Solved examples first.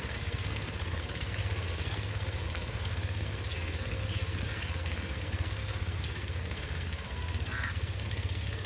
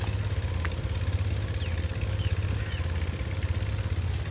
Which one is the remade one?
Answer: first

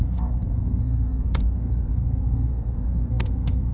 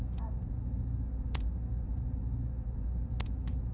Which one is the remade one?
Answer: first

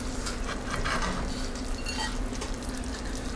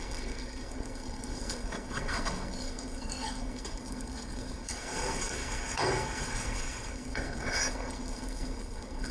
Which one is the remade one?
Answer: second